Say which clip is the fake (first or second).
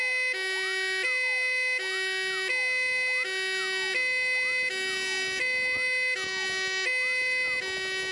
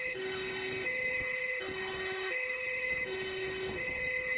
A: second